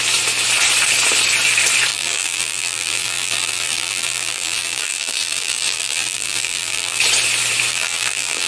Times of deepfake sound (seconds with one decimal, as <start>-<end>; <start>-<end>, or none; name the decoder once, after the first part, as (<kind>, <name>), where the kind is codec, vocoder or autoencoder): 1.9-7.0 (vocoder, BigVGAN v2); 7.7-8.5